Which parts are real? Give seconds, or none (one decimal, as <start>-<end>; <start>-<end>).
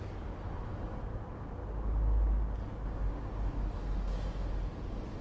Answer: 0.0-5.2